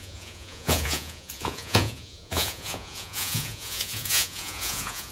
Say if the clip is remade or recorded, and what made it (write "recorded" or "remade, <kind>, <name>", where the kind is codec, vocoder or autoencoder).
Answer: remade, vocoder, Vocos